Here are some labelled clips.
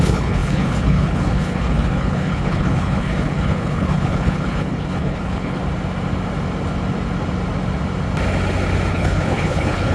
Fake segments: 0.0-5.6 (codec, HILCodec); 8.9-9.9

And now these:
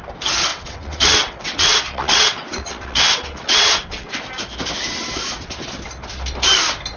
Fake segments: 0.5-4.1 (vocoder, WaveNeXt)

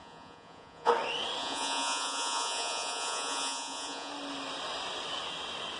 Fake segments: 0.0-0.9 (vocoder, Vocos); 1.4-4.1